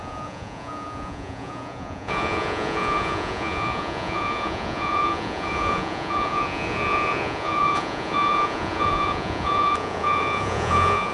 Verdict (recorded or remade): remade